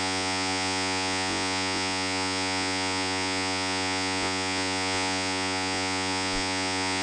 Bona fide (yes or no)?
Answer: no